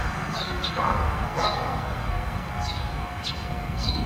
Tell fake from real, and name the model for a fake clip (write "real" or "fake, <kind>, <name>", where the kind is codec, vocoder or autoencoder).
fake, codec, SNAC